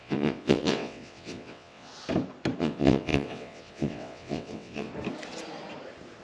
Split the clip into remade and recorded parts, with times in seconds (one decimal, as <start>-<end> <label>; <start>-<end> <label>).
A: 0.0-1.9 remade; 1.9-2.6 recorded; 2.6-4.9 remade; 4.9-6.2 recorded